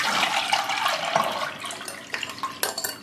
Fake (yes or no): no